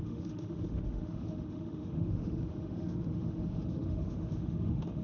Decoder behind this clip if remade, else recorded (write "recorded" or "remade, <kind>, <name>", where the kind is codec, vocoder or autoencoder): remade, autoencoder, DAC-VAE